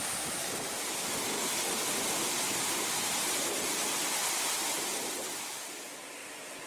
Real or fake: real